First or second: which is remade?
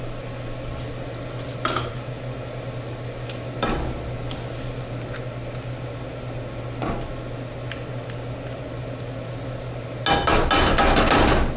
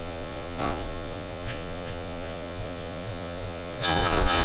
second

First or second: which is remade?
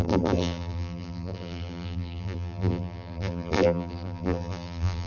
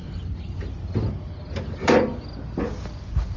first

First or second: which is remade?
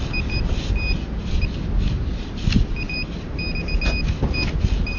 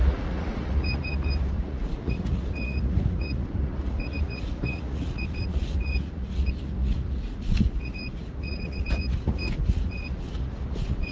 second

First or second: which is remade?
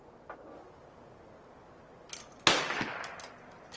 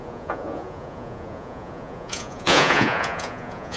second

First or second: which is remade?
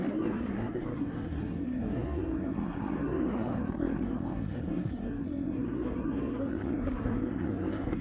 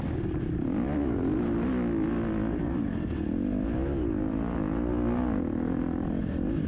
first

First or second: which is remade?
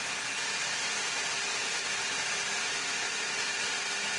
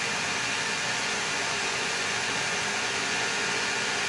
second